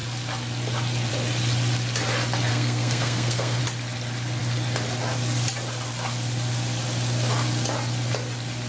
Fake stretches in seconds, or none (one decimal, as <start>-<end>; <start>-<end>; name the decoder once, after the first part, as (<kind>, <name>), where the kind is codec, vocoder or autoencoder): 2.5-3.6 (codec, SNAC)